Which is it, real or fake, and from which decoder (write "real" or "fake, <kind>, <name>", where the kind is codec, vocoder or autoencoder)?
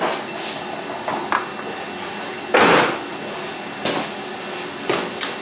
real